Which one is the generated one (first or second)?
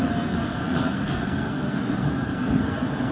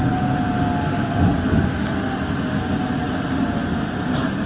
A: first